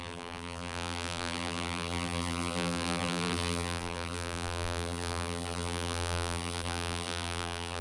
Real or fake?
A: fake